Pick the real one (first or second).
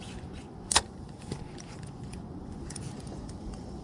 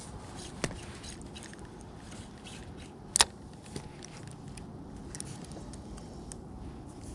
second